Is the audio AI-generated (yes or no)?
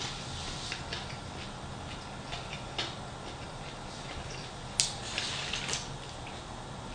no